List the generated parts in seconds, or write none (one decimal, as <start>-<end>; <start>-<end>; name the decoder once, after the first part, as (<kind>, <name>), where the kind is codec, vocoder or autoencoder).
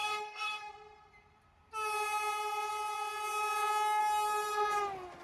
0.0-0.7 (codec, DAC)